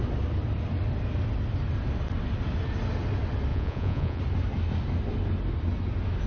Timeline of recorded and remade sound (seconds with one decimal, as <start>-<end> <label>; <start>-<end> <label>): 0.0-3.5 recorded; 3.5-4.2 remade; 4.2-6.3 recorded